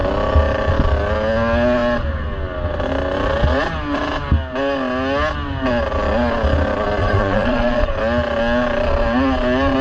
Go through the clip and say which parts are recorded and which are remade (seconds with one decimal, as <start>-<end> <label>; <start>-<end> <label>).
0.0-7.0 recorded; 7.0-7.9 remade; 7.9-9.8 recorded